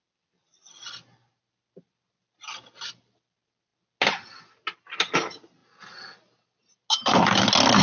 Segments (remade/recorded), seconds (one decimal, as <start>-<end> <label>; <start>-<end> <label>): 0.0-7.8 recorded